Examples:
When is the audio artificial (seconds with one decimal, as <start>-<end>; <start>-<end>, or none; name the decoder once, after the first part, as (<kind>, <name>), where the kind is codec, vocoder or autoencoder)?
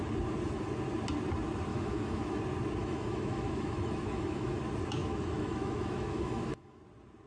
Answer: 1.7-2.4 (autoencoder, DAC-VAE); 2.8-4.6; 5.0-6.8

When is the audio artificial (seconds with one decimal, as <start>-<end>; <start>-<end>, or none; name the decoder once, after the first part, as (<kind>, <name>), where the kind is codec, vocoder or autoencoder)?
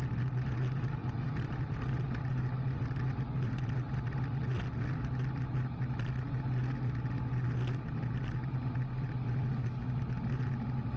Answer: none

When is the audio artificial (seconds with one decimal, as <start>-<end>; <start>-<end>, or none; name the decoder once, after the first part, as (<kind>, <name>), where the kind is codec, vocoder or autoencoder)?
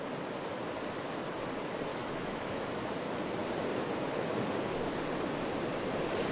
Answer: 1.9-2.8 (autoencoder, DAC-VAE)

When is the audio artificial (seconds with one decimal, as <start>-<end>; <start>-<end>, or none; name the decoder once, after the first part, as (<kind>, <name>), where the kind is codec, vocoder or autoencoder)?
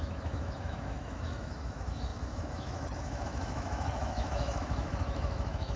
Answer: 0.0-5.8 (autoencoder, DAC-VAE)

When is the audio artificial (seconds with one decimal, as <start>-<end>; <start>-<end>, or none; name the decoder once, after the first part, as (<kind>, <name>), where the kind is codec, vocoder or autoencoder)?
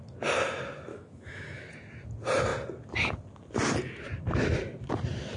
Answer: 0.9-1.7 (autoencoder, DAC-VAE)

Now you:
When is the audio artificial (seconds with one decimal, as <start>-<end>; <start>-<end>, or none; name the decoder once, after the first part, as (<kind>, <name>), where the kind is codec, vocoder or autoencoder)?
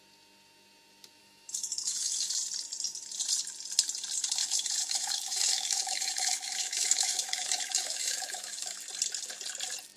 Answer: 1.2-2.3 (autoencoder, DAC-VAE); 4.4-8.8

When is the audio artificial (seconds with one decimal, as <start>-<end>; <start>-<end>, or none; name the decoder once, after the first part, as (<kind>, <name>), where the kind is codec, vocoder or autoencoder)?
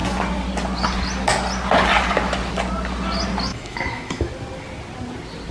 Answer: 3.5-4.3 (autoencoder, DAC-VAE)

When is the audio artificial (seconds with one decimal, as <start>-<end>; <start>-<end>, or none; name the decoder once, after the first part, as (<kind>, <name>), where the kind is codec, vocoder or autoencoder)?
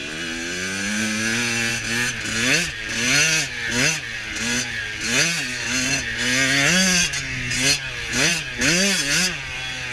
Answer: none